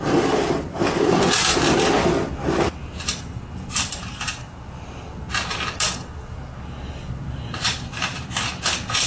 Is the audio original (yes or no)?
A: yes